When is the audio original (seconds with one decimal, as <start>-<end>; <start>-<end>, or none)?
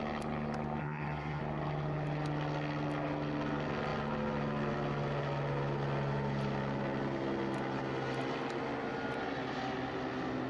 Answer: 0.0-0.8; 1.4-10.5